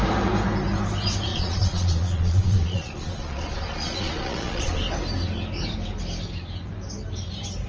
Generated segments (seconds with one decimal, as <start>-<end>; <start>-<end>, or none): 1.3-4.8